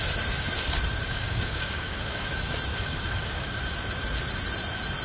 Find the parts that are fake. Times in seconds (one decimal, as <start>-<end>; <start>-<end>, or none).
1.0-2.3; 2.7-3.6